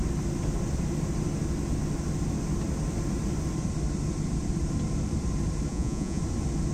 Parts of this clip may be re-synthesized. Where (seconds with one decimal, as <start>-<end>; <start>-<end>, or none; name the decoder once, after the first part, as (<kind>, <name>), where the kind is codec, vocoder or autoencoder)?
5.7-6.2 (vocoder, Vocos)